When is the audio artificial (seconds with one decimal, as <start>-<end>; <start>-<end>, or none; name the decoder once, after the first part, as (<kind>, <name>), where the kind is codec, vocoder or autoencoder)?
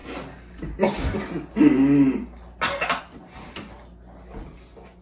none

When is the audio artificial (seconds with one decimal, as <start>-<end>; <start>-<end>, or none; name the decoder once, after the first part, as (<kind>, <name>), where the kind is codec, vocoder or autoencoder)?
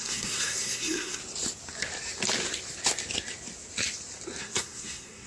0.0-1.2 (codec, SNAC); 4.4-5.3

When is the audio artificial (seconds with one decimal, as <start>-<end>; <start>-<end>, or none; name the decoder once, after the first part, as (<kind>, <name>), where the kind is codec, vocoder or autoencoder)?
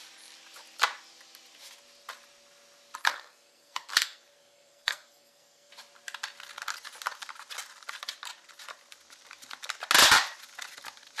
3.0-5.7 (codec, SNAC)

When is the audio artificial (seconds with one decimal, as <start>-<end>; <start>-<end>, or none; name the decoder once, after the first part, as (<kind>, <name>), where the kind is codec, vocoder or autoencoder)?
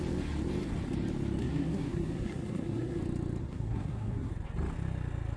1.4-3.0 (codec, SNAC); 3.4-4.3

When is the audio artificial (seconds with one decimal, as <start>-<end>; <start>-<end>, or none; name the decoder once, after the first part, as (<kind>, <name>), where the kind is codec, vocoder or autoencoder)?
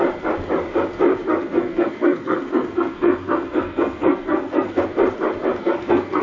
1.1-4.8 (codec, SNAC); 5.6-6.2